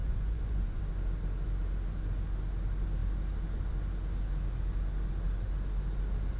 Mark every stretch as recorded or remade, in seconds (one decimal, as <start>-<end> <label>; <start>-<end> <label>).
0.0-0.8 remade; 0.8-6.4 recorded